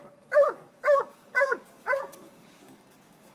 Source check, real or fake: fake